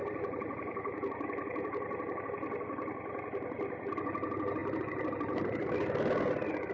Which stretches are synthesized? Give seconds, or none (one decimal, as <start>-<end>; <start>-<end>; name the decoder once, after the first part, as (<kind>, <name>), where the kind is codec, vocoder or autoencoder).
0.0-2.2 (vocoder, BigVGAN v2); 4.6-5.7